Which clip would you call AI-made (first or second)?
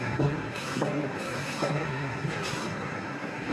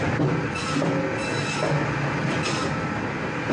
first